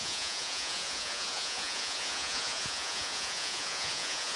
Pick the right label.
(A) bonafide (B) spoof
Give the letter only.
B